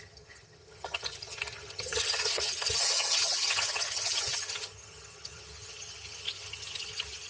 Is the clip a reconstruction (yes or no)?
yes